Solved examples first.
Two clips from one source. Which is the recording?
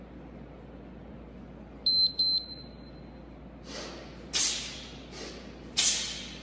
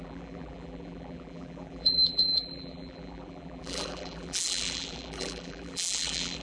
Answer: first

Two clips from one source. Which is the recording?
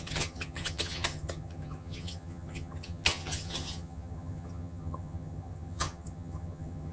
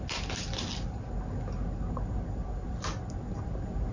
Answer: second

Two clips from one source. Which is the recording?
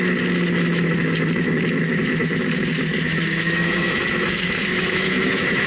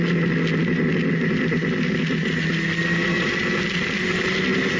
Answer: second